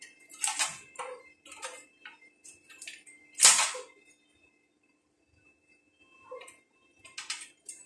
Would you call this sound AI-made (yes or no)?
no